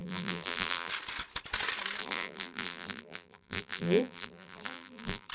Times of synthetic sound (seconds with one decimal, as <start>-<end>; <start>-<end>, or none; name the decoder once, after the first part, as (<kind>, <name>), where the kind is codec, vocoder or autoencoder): 0.0-0.9 (vocoder, BigVGAN v2); 2.0-5.3